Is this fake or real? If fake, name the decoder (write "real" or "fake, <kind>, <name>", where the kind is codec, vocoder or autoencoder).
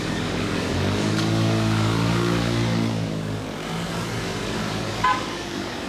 fake, codec, DAC